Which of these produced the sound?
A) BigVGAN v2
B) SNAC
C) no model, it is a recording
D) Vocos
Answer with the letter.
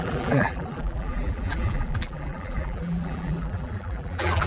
A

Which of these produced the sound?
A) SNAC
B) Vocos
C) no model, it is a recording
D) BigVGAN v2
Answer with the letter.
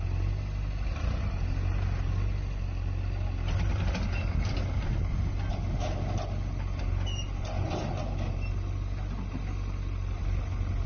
C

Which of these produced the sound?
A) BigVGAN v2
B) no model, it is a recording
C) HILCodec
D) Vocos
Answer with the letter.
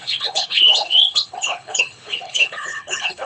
C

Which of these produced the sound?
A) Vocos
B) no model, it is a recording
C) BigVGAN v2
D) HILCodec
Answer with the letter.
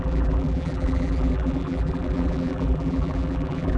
C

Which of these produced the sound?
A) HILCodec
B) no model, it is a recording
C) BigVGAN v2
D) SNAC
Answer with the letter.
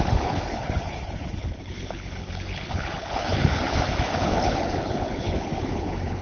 A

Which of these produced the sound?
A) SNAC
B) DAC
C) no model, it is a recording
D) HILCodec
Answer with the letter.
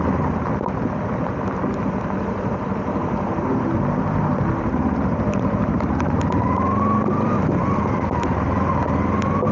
C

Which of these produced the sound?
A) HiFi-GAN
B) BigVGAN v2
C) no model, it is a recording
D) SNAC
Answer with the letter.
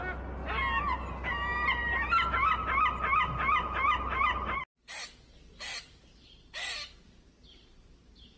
C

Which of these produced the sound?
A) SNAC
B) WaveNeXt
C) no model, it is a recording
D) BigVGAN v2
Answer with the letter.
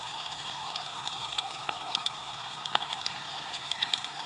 A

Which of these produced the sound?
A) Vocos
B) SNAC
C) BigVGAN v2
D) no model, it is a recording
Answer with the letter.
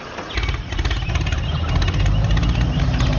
D